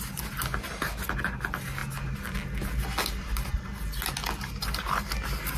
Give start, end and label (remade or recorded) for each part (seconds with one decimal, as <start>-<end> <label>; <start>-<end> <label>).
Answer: 0.0-5.6 recorded